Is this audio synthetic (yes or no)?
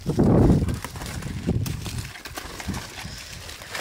no